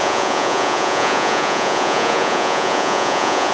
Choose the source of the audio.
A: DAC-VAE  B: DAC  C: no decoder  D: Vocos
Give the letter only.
D